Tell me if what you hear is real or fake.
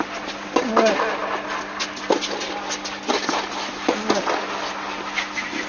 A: real